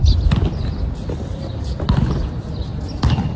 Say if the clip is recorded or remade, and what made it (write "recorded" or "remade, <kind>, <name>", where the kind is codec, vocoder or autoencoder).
recorded